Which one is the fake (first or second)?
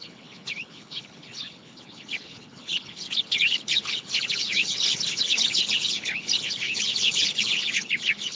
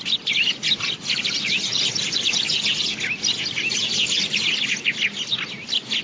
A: first